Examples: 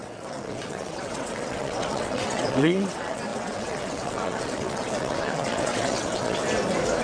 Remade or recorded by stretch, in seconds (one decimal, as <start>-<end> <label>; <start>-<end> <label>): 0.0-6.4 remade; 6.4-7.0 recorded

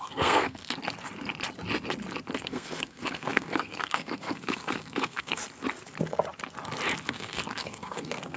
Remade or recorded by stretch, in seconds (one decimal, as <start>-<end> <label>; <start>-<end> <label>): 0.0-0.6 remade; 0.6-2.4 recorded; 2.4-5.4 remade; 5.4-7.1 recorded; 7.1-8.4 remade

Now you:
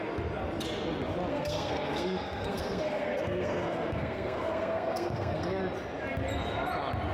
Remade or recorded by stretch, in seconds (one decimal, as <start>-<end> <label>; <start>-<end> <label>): 0.0-1.3 recorded; 1.3-5.6 remade; 5.6-7.1 recorded